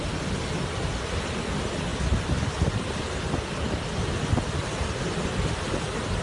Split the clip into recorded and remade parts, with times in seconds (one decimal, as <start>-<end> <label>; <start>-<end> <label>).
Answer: 0.0-6.2 recorded